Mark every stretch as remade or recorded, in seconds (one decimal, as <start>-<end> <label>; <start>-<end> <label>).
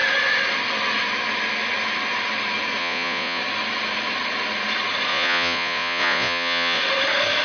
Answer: 0.0-2.8 recorded; 2.8-3.4 remade; 3.4-5.1 recorded; 5.1-6.8 remade; 6.8-7.4 recorded